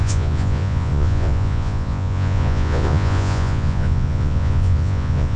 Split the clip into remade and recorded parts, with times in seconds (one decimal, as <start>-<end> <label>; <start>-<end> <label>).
0.0-5.4 remade